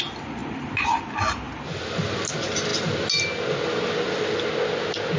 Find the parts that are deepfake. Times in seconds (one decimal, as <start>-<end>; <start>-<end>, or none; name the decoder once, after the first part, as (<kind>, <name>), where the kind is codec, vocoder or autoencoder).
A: none